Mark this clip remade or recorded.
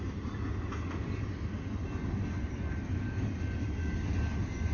recorded